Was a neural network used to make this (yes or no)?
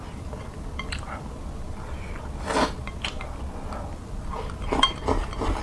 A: no